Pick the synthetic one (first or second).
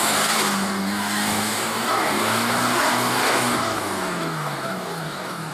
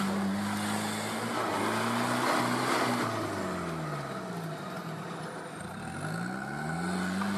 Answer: first